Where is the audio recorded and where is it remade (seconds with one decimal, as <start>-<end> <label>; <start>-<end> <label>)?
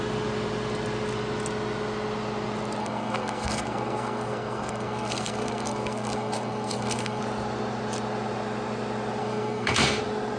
0.0-2.8 recorded; 2.8-7.2 remade; 7.2-9.2 recorded; 9.2-10.0 remade; 10.0-10.4 recorded